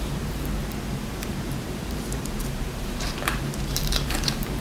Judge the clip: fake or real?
fake